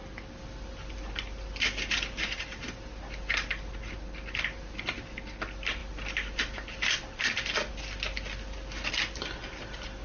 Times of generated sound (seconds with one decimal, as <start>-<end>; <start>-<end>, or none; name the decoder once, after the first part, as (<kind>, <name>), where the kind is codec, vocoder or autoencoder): none